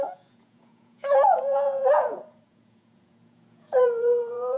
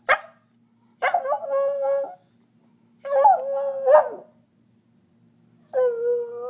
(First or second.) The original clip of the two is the second